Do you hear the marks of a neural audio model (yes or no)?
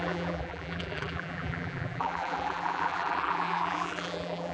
yes